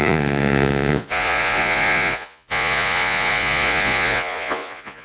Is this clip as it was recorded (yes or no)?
no